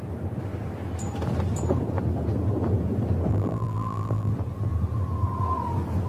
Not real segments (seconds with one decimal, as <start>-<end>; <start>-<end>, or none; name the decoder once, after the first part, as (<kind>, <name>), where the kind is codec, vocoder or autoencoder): 3.3-4.3 (vocoder, BigVGAN v2)